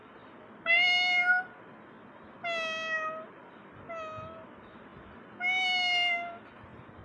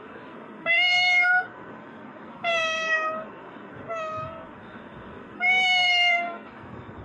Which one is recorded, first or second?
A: first